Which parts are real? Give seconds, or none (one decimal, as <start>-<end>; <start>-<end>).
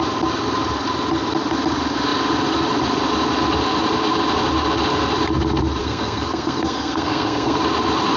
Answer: 0.0-5.8; 7.6-8.2